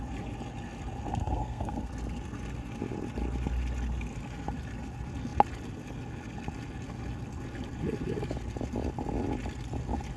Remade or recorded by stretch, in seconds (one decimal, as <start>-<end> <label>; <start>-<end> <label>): 0.0-1.1 recorded; 1.1-1.9 remade; 1.9-10.2 recorded